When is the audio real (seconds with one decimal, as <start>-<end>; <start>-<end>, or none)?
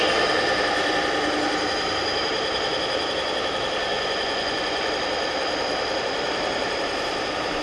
0.0-3.9; 4.9-7.6